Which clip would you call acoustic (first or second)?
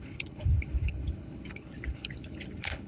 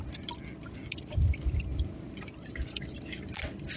second